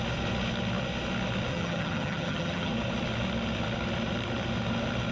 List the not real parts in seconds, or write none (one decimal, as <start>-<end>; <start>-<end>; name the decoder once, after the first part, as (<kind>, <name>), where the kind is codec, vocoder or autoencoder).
1.5-2.7 (vocoder, HiFi-GAN)